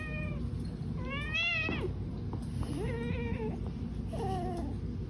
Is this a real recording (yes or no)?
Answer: yes